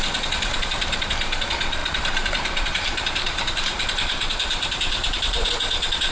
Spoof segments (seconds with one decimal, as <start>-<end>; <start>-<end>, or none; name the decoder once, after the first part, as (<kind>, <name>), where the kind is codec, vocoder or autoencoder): 1.8-5.5 (vocoder, BigVGAN v2)